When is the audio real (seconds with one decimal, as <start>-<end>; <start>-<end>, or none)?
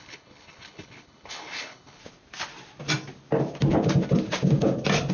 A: 2.0-5.1